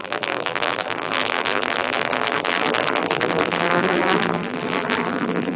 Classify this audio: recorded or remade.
remade